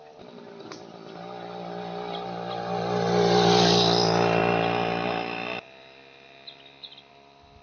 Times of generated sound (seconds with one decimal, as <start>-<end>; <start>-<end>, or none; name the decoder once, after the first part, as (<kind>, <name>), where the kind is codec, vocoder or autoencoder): none